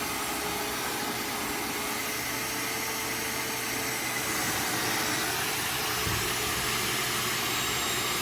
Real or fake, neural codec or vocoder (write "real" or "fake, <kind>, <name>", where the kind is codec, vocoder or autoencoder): real